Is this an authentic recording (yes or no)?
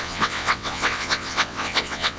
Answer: no